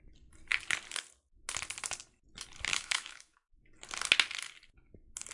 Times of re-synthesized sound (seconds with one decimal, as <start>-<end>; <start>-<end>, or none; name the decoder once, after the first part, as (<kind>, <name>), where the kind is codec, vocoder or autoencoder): 2.7-3.6 (autoencoder, DAC-VAE)